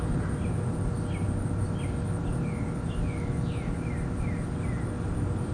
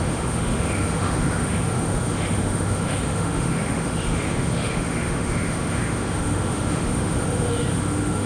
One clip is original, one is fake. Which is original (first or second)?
first